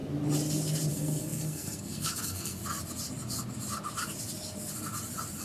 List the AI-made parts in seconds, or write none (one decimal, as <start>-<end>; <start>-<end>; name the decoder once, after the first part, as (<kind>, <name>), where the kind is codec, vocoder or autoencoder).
0.9-2.6 (codec, SNAC)